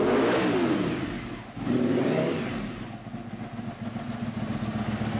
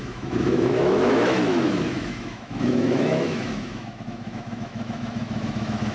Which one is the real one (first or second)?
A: first